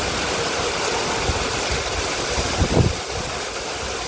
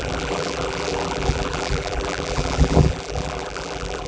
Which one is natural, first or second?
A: first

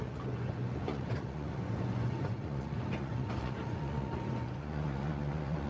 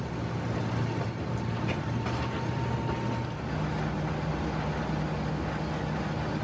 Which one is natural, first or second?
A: second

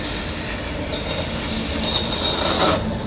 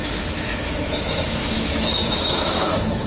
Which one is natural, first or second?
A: first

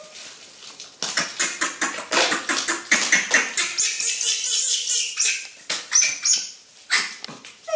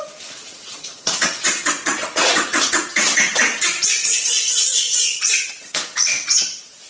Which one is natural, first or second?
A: first